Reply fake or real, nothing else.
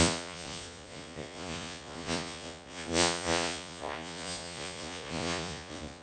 fake